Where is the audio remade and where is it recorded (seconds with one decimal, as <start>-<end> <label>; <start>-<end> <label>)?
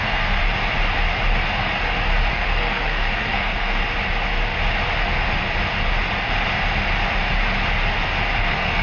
0.0-0.4 remade; 0.4-2.3 recorded; 2.3-3.8 remade; 3.8-8.4 recorded; 8.4-8.8 remade